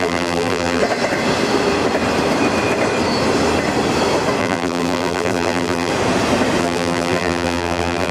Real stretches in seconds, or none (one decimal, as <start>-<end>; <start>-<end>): 0.8-4.4; 5.9-6.6